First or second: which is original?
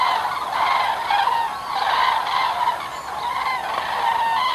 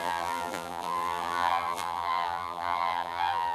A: first